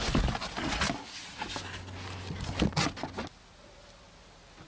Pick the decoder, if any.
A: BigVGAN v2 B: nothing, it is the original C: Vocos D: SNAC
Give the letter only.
B